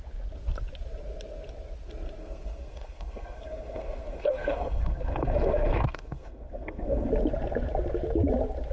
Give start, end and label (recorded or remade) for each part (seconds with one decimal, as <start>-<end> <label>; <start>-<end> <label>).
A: 0.0-2.2 recorded; 2.2-7.1 remade; 7.1-8.7 recorded